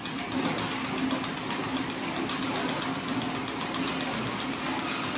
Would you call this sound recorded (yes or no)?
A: yes